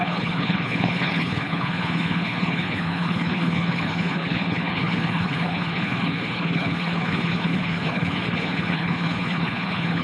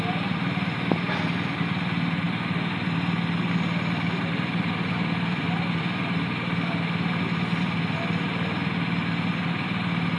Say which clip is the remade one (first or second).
first